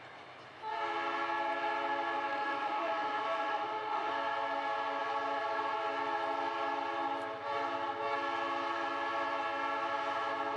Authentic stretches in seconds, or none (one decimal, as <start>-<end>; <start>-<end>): 0.0-2.3; 4.1-10.6